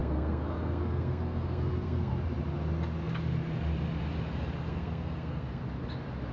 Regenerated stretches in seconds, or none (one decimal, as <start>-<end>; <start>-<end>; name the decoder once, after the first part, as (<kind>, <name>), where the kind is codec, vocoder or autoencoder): 0.0-2.1 (codec, SNAC); 4.7-5.6